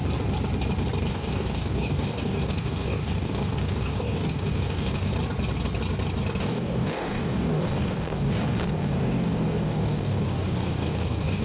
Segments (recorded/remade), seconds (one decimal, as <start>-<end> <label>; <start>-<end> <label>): 0.0-1.1 recorded; 1.1-5.1 remade; 5.1-6.4 recorded; 6.4-11.4 remade